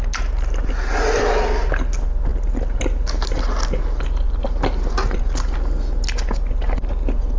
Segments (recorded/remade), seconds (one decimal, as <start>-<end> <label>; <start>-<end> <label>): 0.0-7.4 recorded